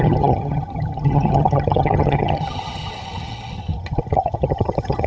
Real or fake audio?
fake